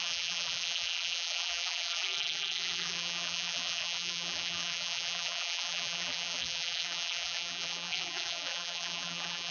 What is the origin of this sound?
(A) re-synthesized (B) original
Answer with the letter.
A